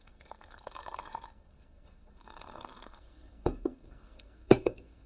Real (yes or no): no